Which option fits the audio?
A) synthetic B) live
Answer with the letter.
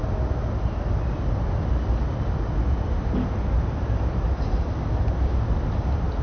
B